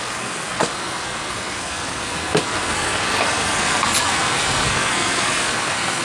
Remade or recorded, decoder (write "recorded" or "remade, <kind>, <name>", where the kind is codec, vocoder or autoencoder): remade, codec, SNAC